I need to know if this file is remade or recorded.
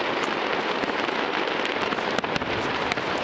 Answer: recorded